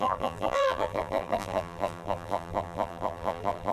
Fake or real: fake